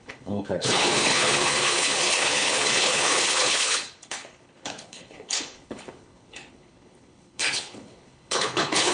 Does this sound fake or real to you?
fake